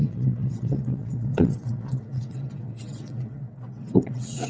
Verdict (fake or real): fake